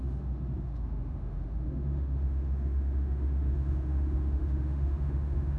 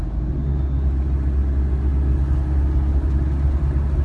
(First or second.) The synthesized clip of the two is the first